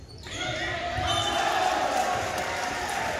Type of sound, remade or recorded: recorded